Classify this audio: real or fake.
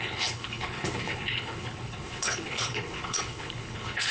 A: fake